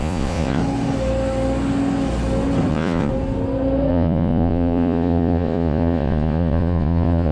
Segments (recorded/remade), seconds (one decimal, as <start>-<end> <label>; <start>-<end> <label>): 0.0-0.6 remade; 0.6-2.7 recorded; 2.7-3.1 remade; 3.1-3.9 recorded; 3.9-7.3 remade

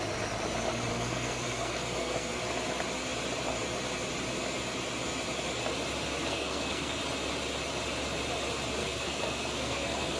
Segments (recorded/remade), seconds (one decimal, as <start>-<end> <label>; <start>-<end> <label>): 0.0-0.9 recorded; 0.9-2.4 remade; 2.4-6.2 recorded; 6.2-7.0 remade; 7.0-8.8 recorded; 8.8-10.2 remade